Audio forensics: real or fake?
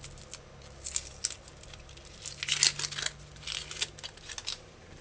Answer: real